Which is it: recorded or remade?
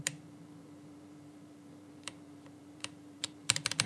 remade